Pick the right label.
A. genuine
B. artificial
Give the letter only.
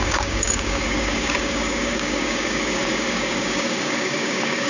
B